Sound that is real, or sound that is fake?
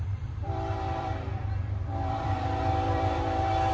fake